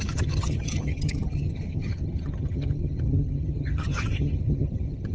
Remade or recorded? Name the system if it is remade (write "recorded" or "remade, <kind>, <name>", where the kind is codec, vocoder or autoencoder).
remade, vocoder, HiFi-GAN